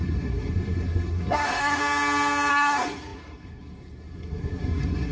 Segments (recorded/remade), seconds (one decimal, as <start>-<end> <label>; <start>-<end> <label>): 0.0-1.8 remade; 1.8-2.5 recorded; 2.5-5.1 remade

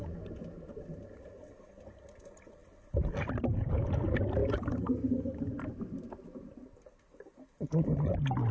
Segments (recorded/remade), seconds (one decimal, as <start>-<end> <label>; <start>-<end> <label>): 0.0-8.5 recorded